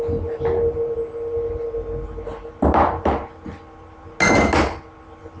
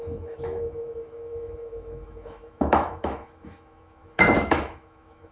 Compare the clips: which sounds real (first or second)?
first